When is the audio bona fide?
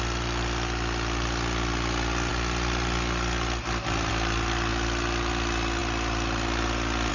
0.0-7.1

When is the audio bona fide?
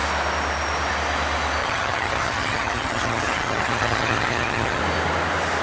0.0-1.6; 4.8-5.6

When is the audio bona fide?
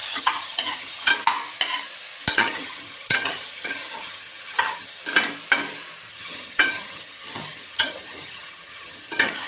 1.1-2.3; 5.0-6.1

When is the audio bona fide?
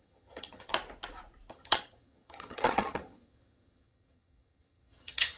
0.7-1.5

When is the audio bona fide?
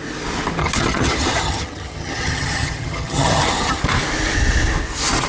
0.0-0.6; 3.8-5.3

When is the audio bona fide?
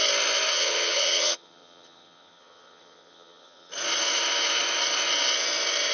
0.0-0.5; 3.7-5.9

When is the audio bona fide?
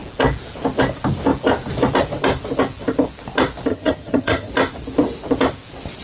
0.0-3.7; 4.5-6.0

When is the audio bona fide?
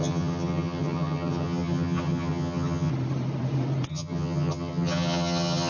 2.9-3.9